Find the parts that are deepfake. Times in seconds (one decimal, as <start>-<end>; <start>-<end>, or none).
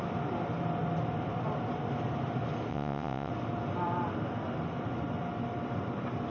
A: 2.7-3.3